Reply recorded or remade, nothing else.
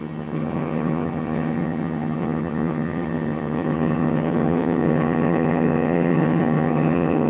remade